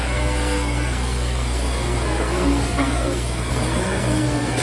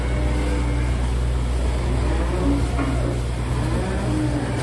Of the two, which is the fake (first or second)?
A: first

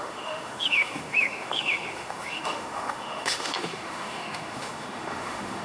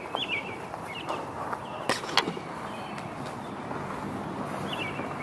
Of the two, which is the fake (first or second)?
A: first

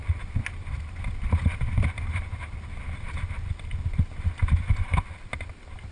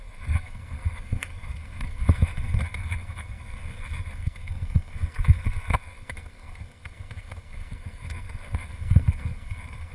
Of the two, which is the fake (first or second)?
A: second